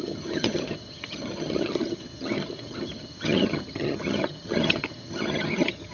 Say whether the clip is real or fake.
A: fake